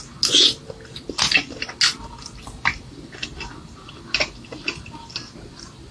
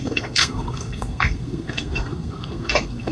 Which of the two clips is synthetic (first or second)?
second